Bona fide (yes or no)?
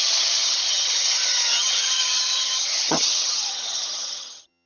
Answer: no